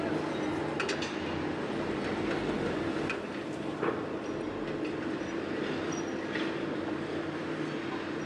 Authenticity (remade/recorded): recorded